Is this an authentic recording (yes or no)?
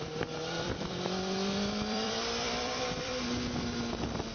no